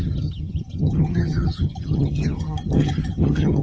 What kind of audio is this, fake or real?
fake